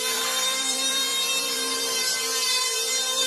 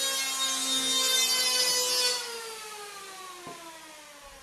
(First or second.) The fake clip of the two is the first